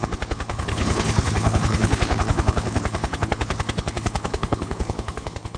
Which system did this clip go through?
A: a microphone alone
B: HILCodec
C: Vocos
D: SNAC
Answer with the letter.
B